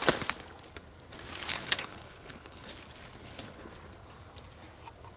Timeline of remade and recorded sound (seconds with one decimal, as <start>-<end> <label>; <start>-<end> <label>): 0.0-1.5 recorded; 1.5-2.7 remade; 2.7-3.2 recorded; 3.2-3.7 remade; 3.7-5.2 recorded

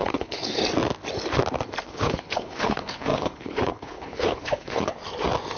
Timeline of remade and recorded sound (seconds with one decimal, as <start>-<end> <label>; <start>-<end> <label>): 0.0-0.6 remade; 0.6-1.8 recorded; 1.8-5.0 remade; 5.0-5.6 recorded

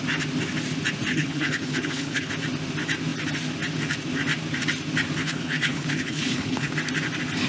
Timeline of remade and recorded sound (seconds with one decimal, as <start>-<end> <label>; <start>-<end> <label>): 0.0-1.1 recorded; 1.1-2.3 remade; 2.3-5.2 recorded; 5.2-6.7 remade; 6.7-7.5 recorded

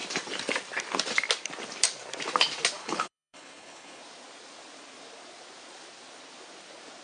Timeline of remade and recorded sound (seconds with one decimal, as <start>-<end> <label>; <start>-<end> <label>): 0.0-2.8 recorded; 2.8-4.0 remade; 4.0-7.0 recorded

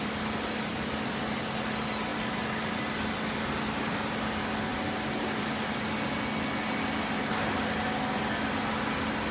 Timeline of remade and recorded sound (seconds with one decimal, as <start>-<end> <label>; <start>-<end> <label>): 0.0-9.3 recorded

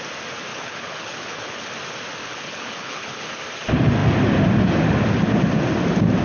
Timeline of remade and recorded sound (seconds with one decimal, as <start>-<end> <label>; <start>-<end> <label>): 0.0-0.5 recorded; 0.5-1.7 remade; 1.7-2.2 recorded; 2.2-3.3 remade; 3.3-6.2 recorded

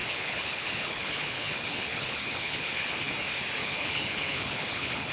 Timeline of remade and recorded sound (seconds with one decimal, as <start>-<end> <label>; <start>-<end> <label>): 0.0-3.1 remade; 3.1-3.6 recorded; 3.6-5.1 remade